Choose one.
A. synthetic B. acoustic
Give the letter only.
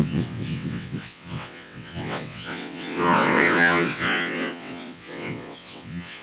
A